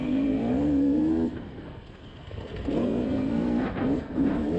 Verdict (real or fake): fake